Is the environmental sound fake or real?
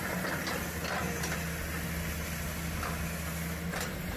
real